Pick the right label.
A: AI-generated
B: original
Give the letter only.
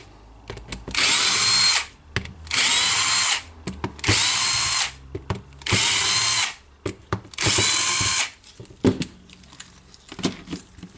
B